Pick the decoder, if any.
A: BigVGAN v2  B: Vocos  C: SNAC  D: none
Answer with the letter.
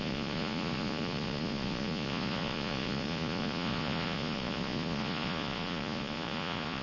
B